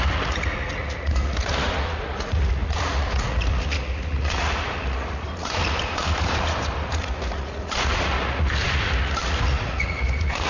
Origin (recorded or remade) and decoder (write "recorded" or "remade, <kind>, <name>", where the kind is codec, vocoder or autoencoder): remade, vocoder, Vocos